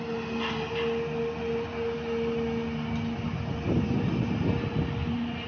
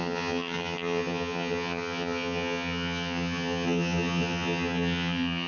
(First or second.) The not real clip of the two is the second